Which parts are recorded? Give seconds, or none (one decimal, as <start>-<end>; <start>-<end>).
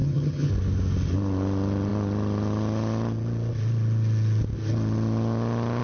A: 0.5-5.8